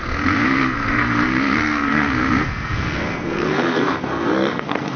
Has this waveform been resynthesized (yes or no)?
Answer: yes